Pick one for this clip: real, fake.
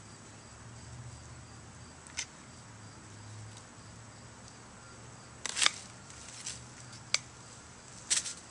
real